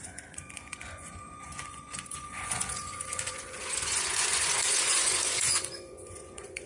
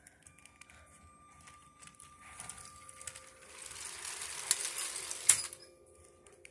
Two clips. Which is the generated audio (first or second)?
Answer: first